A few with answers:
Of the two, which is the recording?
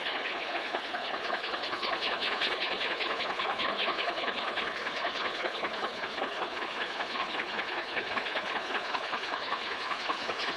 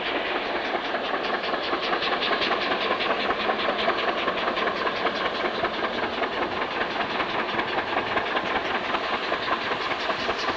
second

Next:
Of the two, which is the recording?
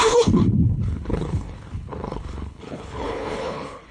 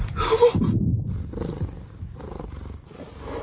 second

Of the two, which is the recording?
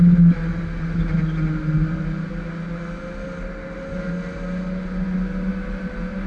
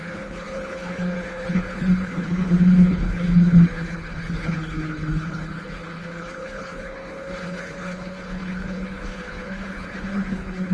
first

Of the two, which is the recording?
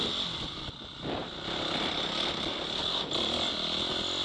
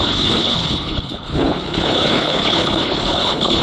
first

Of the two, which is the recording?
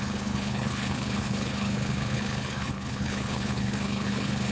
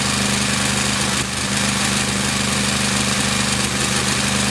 second